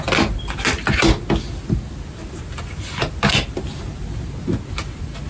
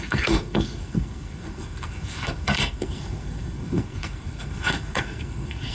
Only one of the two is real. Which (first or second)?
first